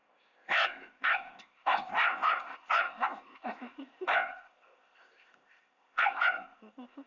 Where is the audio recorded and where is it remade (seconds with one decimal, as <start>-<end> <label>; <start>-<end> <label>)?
0.0-7.1 remade